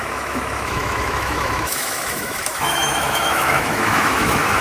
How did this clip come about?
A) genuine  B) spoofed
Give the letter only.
B